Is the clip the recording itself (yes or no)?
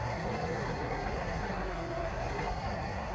no